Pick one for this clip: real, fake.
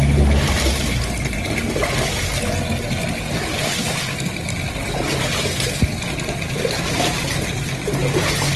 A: real